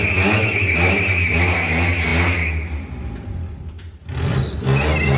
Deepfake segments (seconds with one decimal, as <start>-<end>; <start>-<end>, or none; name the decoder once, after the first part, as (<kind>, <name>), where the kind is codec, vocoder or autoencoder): none